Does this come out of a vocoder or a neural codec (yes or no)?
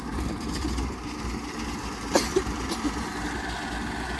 no